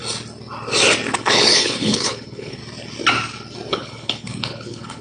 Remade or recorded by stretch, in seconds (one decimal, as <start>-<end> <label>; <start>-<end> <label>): 0.0-1.2 recorded; 1.2-2.6 remade; 2.6-3.7 recorded; 3.7-5.0 remade